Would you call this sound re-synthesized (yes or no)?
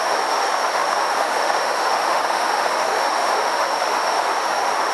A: yes